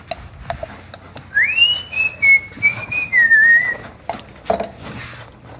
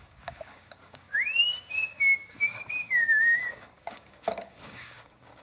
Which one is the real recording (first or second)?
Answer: first